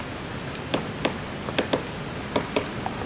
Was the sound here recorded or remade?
recorded